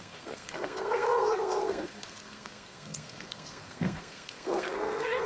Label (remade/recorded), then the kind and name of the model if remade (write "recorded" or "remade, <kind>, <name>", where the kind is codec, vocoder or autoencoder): remade, codec, SNAC